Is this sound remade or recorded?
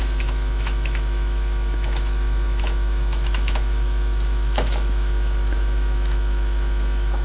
remade